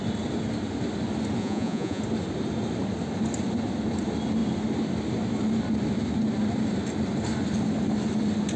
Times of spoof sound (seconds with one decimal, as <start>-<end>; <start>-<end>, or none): 1.4-2.0